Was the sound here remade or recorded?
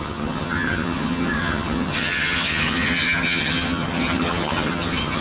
remade